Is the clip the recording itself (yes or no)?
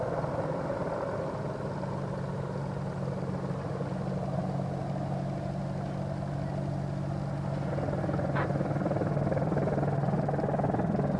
yes